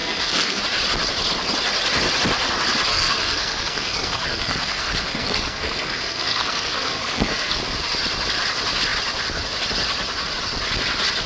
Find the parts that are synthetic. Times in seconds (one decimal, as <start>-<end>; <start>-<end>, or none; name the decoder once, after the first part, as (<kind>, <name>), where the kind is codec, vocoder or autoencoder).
0.0-0.6 (codec, SNAC); 2.9-7.6